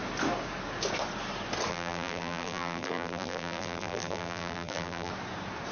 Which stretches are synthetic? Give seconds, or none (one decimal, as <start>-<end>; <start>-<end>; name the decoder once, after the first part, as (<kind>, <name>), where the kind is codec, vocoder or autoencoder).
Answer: 1.7-5.1 (vocoder, BigVGAN v2)